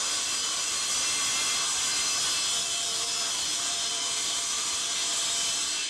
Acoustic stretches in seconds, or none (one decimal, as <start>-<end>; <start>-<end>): 0.9-2.6; 5.0-5.5